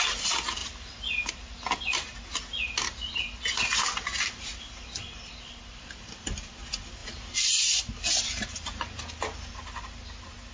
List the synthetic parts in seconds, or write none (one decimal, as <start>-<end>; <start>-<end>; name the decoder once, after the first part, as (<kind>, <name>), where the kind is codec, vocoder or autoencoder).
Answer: none